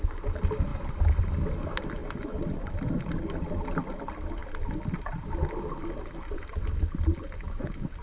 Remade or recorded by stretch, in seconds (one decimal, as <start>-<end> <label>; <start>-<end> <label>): 0.0-8.0 recorded